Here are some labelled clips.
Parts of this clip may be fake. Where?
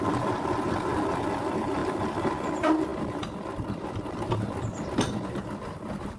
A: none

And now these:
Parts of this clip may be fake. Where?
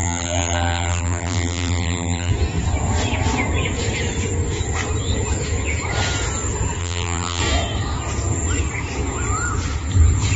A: 0.0-2.3 (vocoder, BigVGAN v2); 6.8-7.4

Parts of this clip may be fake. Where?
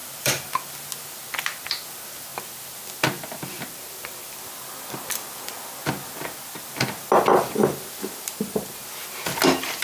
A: 0.0-0.5 (vocoder, BigVGAN v2)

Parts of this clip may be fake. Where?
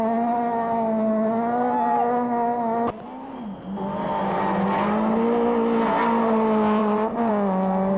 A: 6.8-7.3 (vocoder, BigVGAN v2)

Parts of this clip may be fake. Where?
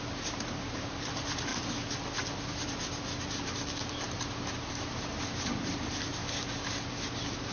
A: 0.0-1.5 (vocoder, BigVGAN v2); 2.5-6.2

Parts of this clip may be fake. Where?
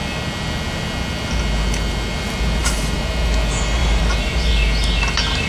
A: 2.6-3.1 (vocoder, BigVGAN v2); 3.8-4.5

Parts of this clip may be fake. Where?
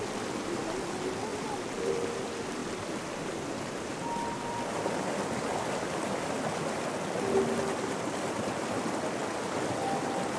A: 1.3-1.8 (vocoder, BigVGAN v2); 2.6-6.2; 9.2-9.7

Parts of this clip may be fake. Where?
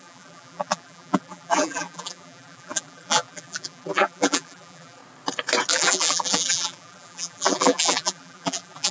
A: 0.0-5.0 (vocoder, BigVGAN v2); 5.7-8.9